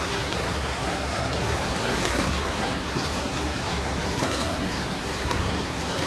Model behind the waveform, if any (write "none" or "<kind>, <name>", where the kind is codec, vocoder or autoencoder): codec, SNAC